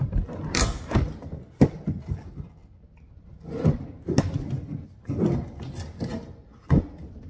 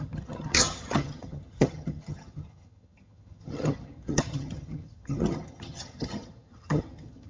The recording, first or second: first